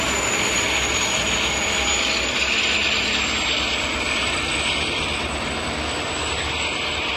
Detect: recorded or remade recorded